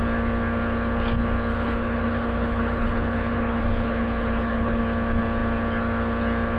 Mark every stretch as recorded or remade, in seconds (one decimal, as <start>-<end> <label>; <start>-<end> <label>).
0.0-1.5 recorded; 1.5-4.8 remade; 4.8-6.6 recorded